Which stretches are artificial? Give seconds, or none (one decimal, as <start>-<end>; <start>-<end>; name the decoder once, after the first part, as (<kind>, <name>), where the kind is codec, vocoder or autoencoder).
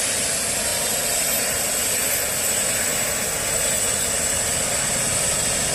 0.7-1.9 (vocoder, BigVGAN v2)